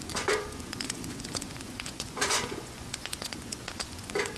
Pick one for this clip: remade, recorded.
remade